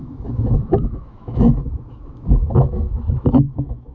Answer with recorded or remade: remade